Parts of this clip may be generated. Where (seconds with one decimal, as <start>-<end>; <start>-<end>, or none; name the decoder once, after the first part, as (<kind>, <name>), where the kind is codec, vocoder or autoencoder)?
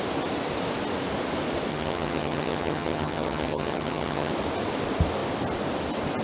1.7-4.3 (vocoder, HiFi-GAN)